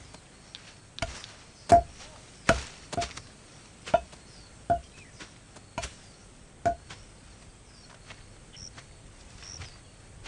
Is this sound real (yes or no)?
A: yes